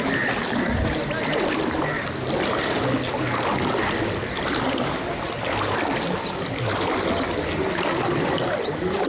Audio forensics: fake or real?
real